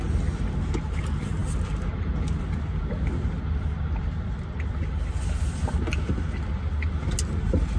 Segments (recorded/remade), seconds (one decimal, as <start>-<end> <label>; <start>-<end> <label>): 0.0-7.8 recorded